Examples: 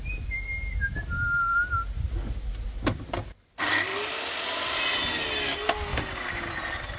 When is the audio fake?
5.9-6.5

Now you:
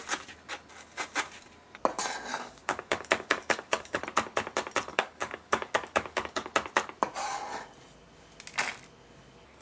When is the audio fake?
2.3-4.0; 4.9-6.5